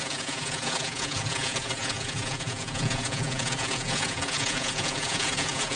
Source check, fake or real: fake